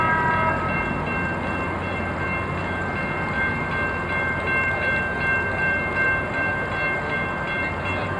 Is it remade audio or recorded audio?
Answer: recorded